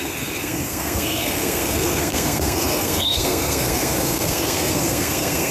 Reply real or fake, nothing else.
fake